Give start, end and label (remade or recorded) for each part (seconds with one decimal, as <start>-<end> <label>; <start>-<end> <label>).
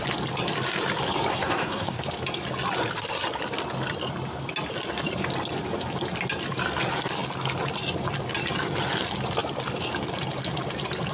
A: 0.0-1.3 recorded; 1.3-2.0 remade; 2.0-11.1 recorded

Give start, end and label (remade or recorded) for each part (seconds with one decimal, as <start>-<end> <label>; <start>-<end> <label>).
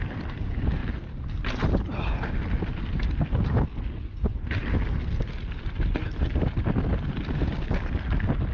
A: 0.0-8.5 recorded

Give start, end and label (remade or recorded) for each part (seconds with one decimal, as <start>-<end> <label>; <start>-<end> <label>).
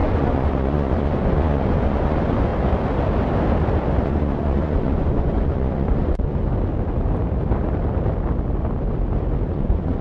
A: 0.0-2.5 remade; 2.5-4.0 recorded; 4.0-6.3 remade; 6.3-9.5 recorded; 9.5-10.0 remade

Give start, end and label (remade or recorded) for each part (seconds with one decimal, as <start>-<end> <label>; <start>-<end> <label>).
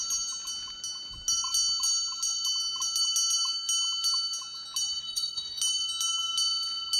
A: 0.0-5.0 recorded; 5.0-5.6 remade; 5.6-7.0 recorded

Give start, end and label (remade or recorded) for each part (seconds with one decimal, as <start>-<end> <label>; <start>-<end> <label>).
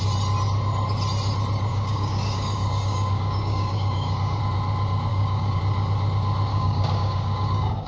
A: 0.0-1.7 recorded; 1.7-4.4 remade; 4.4-5.1 recorded; 5.1-5.6 remade; 5.6-6.5 recorded; 6.5-7.9 remade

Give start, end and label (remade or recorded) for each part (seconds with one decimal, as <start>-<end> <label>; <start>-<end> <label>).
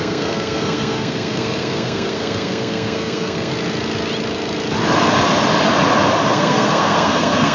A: 0.0-3.5 remade; 3.5-6.3 recorded; 6.3-7.5 remade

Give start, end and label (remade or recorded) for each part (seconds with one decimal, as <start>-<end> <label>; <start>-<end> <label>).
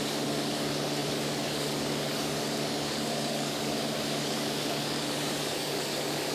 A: 0.0-6.3 remade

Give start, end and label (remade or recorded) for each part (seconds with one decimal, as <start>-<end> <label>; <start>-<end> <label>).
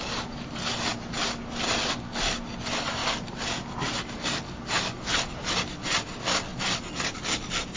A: 0.0-7.8 recorded